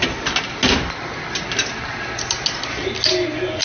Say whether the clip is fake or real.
real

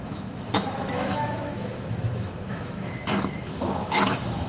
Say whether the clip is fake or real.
fake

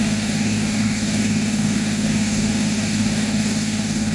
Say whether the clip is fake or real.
fake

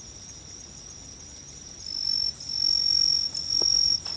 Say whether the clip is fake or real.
real